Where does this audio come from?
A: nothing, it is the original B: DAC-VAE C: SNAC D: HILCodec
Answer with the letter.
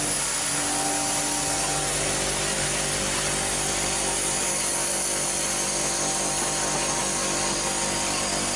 A